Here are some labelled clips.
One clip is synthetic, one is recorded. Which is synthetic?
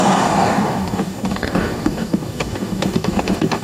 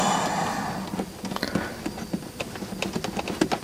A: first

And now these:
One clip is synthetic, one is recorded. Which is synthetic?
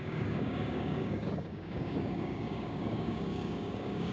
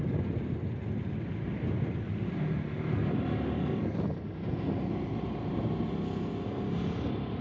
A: first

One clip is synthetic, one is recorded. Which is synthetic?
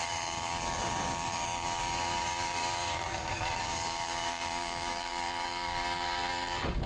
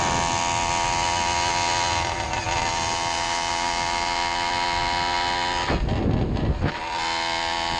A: first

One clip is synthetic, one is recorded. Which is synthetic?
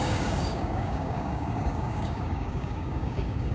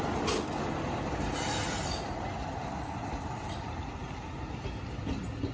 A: first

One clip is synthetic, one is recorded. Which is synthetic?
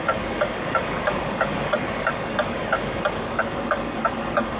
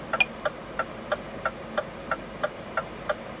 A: first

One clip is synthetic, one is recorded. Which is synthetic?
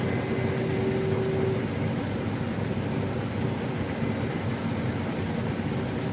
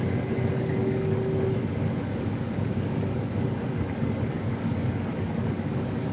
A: second